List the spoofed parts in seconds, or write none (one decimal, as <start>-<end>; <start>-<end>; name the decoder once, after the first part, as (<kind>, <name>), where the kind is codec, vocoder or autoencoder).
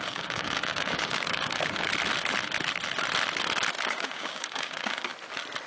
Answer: 0.0-1.9 (codec, DAC); 3.8-5.1